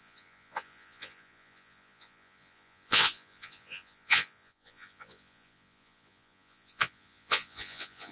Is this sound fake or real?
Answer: fake